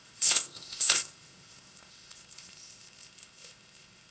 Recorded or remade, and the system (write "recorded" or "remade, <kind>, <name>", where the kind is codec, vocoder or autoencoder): remade, codec, ZipCodec